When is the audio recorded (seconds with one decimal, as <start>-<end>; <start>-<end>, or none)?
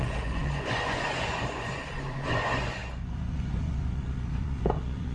none